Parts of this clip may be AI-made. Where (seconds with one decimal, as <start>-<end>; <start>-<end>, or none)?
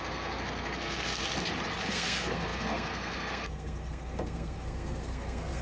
0.0-1.2; 1.9-5.6